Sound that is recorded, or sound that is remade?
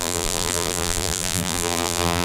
remade